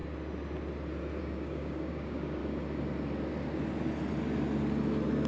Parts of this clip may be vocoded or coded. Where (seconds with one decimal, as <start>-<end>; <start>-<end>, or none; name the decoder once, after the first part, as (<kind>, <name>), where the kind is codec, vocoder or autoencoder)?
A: 1.2-2.4 (codec, DAC)